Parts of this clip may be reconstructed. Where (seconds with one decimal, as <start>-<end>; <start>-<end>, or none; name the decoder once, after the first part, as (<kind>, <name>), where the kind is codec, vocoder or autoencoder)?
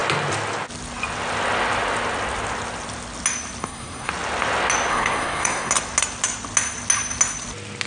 3.6-4.1 (codec, SNAC); 4.9-5.7